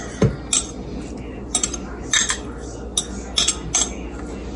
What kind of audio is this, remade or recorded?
recorded